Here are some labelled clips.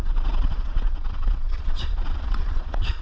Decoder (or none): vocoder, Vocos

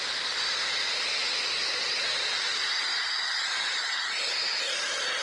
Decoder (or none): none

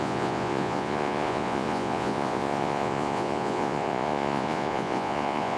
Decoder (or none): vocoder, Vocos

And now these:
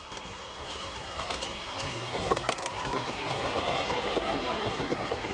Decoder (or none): codec, SNAC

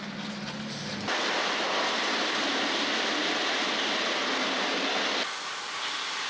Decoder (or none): none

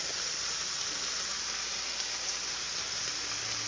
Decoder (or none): none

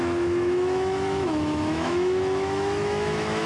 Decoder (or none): autoencoder, DAC-VAE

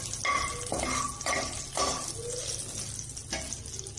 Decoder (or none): none